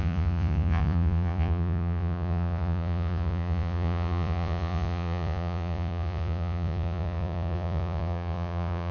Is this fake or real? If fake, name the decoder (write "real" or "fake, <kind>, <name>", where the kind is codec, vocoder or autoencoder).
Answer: fake, vocoder, Vocos